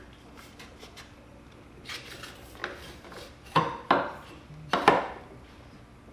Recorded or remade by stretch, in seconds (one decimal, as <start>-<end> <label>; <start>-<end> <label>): 0.0-6.1 recorded